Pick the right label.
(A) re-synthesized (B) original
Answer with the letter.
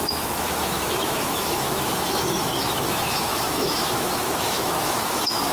A